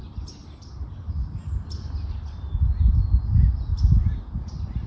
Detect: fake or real real